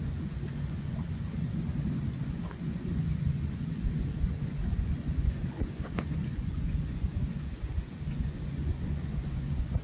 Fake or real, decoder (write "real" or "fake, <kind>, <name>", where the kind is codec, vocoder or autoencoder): fake, vocoder, Vocos